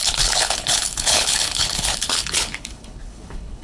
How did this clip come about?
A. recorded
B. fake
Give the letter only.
B